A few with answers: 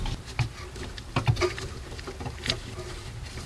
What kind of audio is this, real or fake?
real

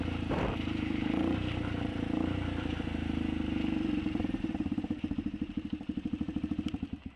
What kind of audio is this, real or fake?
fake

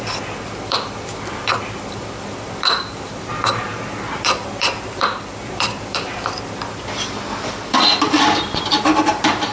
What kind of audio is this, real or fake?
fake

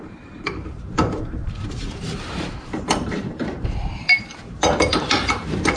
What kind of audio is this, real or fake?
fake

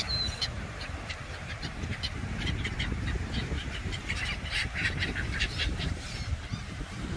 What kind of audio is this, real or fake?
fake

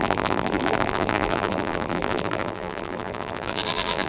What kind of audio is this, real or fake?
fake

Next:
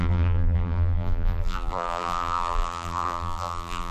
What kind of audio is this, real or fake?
fake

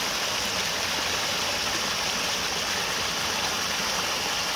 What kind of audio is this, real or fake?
real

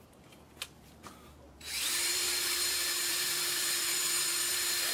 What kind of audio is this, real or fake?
fake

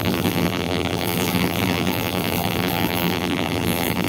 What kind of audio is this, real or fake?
fake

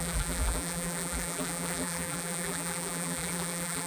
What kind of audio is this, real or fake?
fake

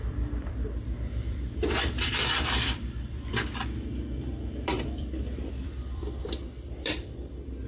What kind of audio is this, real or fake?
fake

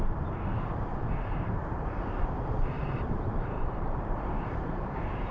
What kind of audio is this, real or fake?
fake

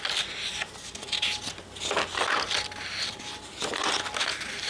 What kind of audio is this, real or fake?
real